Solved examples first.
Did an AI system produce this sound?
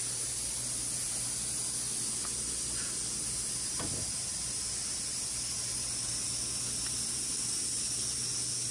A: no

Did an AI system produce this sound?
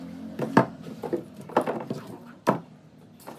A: no